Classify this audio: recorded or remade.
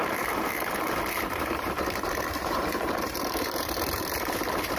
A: remade